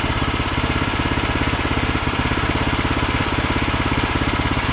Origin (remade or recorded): remade